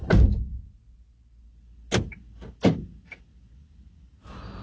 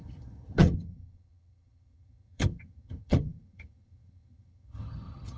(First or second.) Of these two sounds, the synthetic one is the second